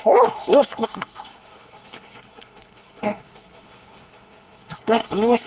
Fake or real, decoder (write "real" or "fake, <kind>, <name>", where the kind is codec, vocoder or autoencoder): fake, codec, SNAC